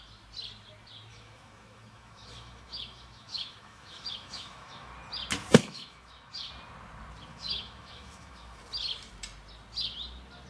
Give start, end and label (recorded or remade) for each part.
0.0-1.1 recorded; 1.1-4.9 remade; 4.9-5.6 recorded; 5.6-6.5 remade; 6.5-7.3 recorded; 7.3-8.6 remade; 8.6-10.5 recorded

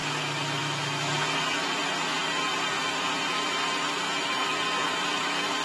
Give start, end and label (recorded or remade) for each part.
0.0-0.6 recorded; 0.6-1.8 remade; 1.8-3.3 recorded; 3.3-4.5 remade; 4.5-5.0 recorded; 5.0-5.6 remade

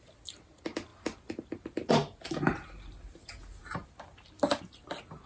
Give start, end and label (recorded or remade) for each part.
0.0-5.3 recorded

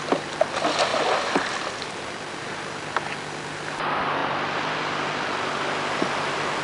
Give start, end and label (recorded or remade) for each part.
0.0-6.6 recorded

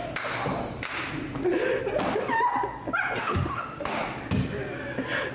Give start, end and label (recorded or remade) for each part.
0.0-3.2 recorded; 3.2-4.0 remade; 4.0-5.3 recorded

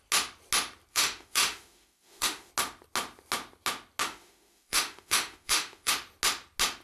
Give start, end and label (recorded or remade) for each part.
0.0-0.9 recorded; 0.9-2.5 remade; 2.5-4.0 recorded; 4.0-5.9 remade; 5.9-6.8 recorded